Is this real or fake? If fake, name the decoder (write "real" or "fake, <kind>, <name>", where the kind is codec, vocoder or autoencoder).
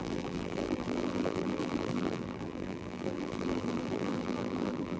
fake, vocoder, BigVGAN v2